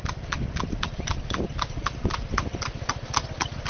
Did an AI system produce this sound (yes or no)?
no